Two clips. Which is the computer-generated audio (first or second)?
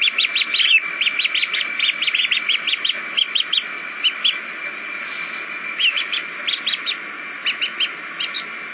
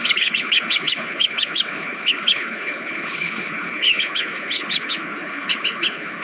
second